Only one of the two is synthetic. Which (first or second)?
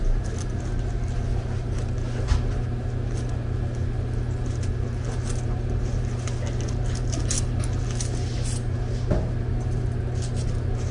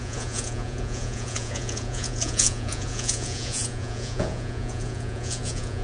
second